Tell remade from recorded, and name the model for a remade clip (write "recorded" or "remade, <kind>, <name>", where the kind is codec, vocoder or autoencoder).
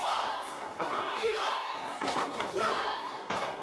remade, codec, SNAC